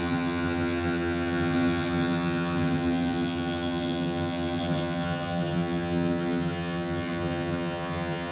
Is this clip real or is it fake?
fake